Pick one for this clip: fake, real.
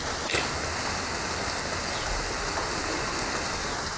real